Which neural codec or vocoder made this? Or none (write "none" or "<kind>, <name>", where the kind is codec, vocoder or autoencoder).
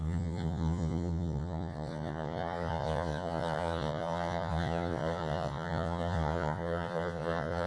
vocoder, Vocos